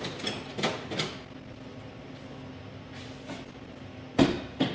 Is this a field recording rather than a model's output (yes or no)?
yes